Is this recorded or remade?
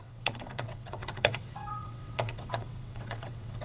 remade